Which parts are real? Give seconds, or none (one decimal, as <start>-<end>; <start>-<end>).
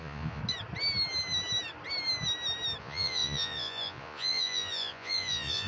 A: 0.4-2.8